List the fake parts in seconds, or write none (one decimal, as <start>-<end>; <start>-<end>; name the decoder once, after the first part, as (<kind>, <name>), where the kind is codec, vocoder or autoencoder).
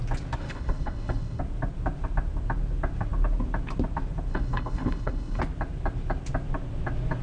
0.4-1.4 (codec, HILCodec); 4.3-5.4